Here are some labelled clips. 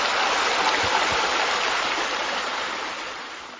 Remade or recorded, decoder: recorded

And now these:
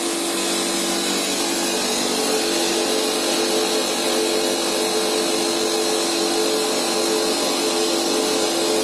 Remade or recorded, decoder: recorded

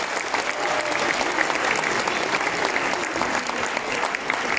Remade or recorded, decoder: recorded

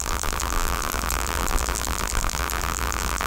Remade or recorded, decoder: remade, vocoder, BigVGAN v2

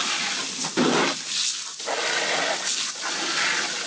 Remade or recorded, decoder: recorded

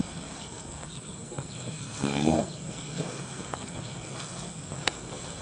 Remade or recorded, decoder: remade, codec, SNAC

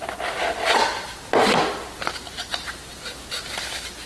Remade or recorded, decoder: recorded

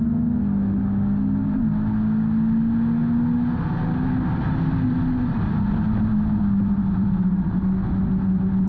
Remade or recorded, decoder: recorded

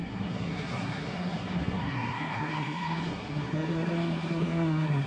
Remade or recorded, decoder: remade, codec, SNAC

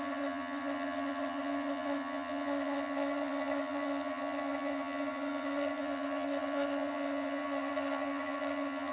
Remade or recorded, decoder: remade, vocoder, HiFi-GAN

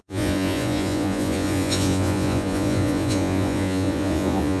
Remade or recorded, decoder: remade, vocoder, Vocos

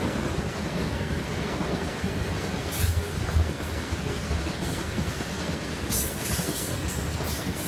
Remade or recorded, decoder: remade, codec, SNAC